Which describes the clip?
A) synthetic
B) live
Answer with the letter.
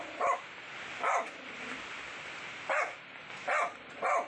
B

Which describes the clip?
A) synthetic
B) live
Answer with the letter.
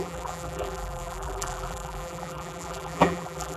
A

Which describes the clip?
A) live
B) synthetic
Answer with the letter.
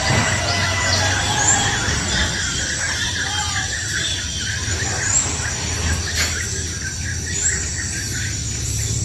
A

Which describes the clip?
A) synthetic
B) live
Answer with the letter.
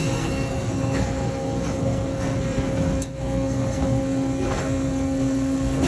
A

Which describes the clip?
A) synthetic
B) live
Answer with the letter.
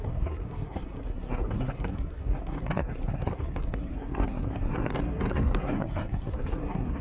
A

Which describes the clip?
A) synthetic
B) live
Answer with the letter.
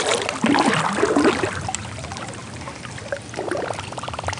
A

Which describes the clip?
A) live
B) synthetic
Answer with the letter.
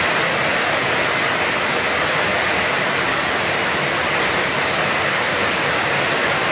A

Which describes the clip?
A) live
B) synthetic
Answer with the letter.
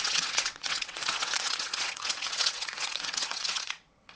B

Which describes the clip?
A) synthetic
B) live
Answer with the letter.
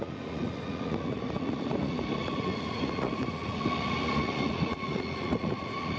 A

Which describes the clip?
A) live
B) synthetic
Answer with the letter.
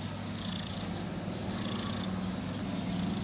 A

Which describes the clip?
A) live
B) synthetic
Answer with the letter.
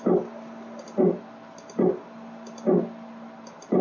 A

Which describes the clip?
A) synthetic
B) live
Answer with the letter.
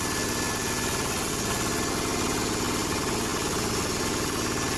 B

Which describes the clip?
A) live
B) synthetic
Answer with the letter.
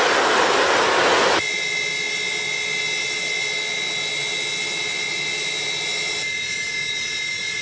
A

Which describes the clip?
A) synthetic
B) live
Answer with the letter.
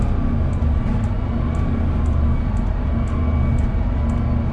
B